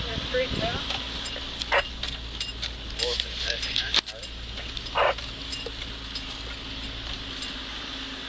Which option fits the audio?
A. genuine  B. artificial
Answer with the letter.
A